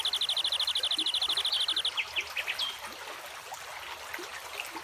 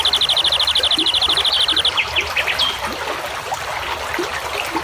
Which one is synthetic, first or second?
second